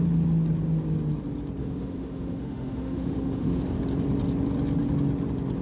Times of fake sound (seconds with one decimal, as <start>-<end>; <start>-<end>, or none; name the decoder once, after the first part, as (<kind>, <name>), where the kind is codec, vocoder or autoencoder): 1.6-3.6 (autoencoder, DAC-VAE)

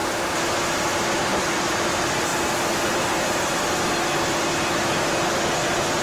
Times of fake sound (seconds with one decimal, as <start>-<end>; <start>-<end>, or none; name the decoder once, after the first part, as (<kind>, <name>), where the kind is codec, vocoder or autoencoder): none